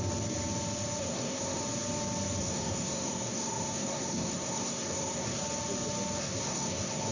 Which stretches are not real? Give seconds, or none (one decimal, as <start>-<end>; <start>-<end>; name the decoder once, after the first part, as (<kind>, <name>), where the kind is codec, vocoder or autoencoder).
1.0-1.6 (codec, SNAC); 2.4-5.4; 6.2-7.1